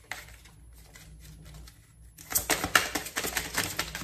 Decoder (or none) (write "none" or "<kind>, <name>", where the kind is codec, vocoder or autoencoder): none